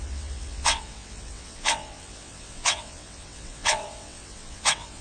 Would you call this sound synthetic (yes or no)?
yes